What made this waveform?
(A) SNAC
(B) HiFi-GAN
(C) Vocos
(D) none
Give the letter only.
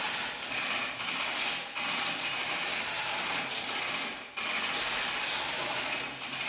D